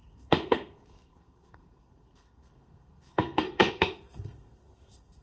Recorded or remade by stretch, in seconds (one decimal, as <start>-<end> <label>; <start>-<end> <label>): 0.0-5.2 remade